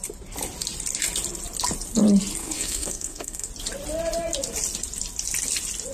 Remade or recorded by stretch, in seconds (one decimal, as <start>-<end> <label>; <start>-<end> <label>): 0.0-2.4 recorded; 2.4-3.5 remade; 3.5-5.9 recorded